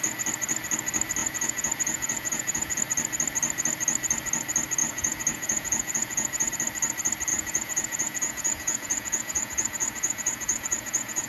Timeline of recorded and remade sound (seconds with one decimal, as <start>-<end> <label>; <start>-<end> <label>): 0.0-1.2 recorded; 1.2-2.8 remade; 2.8-4.8 recorded; 4.8-6.5 remade; 6.5-7.3 recorded; 7.3-11.3 remade